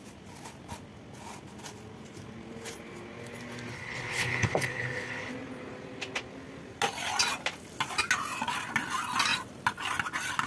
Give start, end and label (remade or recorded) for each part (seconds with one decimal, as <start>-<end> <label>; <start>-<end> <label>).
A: 0.0-3.7 recorded; 3.7-5.3 remade; 5.3-10.5 recorded